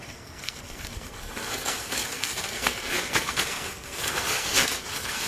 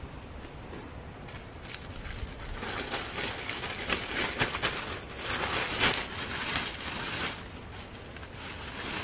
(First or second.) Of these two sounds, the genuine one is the second